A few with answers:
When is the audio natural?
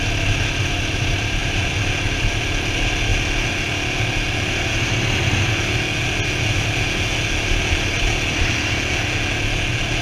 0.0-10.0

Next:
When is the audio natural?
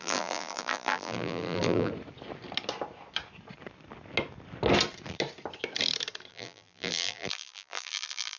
1.9-6.3